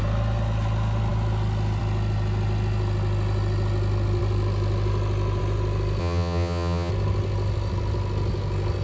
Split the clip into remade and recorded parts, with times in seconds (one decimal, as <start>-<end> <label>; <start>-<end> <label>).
0.0-6.0 recorded; 6.0-6.9 remade; 6.9-8.8 recorded